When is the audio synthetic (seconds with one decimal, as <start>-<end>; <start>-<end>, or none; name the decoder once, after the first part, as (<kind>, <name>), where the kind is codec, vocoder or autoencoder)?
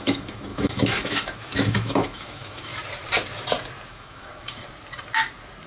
0.0-2.7 (autoencoder, DAC-VAE); 3.9-4.6